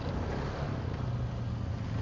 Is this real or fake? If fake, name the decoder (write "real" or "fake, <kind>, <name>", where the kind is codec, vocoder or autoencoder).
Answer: real